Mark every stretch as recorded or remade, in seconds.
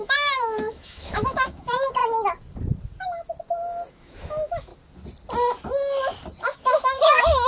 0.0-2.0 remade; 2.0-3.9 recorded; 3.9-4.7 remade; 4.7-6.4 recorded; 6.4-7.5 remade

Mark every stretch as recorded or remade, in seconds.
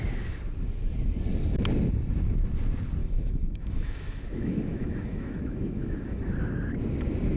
0.0-3.0 recorded; 3.0-6.2 remade; 6.2-7.4 recorded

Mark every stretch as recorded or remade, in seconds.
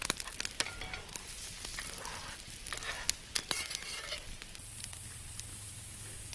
0.0-5.5 recorded; 5.5-6.3 remade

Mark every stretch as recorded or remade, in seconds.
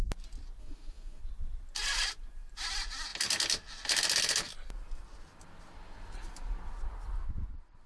0.0-0.6 recorded; 0.6-1.2 remade; 1.2-7.9 recorded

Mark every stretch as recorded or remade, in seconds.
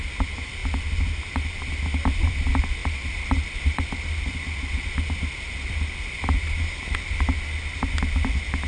0.0-8.7 recorded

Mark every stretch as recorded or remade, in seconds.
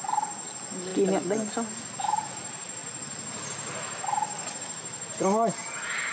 0.0-6.1 recorded